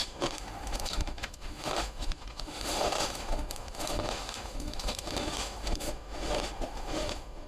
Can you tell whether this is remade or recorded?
remade